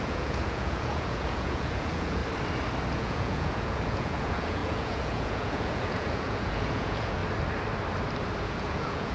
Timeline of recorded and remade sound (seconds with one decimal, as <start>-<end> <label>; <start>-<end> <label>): 0.0-2.2 remade; 2.2-2.9 recorded; 2.9-7.2 remade; 7.2-8.4 recorded; 8.4-9.1 remade